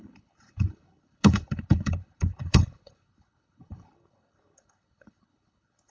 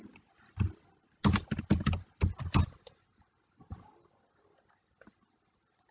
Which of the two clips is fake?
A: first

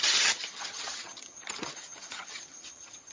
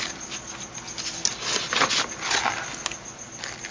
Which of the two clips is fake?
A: first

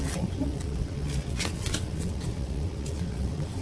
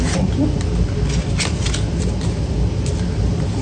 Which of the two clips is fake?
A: first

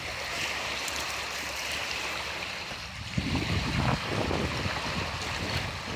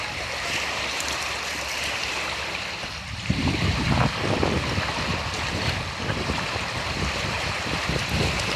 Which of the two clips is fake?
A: second